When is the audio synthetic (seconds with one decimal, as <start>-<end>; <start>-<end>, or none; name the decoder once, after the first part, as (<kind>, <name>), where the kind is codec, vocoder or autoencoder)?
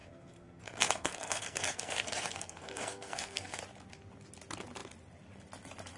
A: 0.0-3.6 (codec, SNAC)